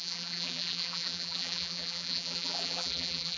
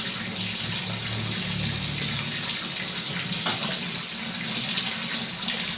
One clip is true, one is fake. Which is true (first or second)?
second